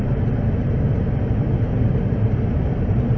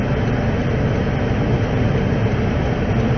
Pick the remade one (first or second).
first